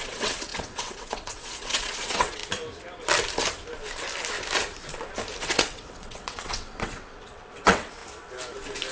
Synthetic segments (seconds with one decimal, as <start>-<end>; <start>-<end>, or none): 0.0-2.4; 5.4-8.0